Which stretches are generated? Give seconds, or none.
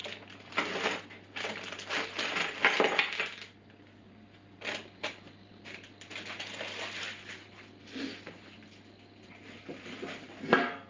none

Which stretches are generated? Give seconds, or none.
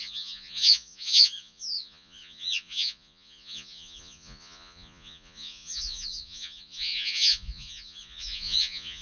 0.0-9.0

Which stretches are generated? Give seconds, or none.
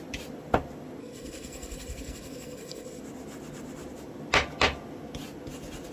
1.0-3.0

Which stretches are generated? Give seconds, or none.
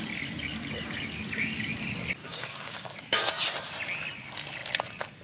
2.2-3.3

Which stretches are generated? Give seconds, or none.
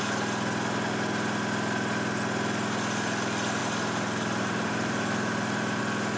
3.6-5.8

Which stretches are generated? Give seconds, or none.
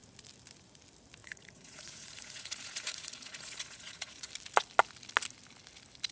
1.2-4.3